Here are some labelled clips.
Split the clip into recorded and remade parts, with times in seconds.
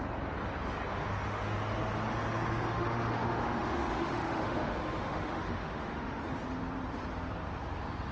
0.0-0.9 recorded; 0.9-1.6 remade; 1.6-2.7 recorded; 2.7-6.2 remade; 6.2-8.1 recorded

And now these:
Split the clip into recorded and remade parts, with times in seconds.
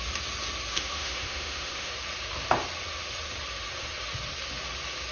0.0-0.7 recorded; 0.7-1.9 remade; 1.9-5.1 recorded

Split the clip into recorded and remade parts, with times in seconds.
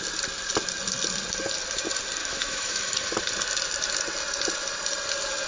0.0-2.2 recorded; 2.2-2.8 remade; 2.8-5.5 recorded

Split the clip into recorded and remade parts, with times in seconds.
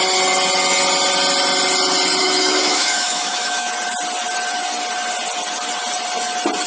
0.0-2.2 recorded; 2.2-3.7 remade; 3.7-6.7 recorded